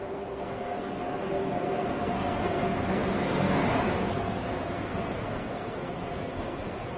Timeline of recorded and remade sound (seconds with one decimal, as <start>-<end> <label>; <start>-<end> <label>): 0.0-3.6 remade; 3.6-4.1 recorded; 4.1-7.0 remade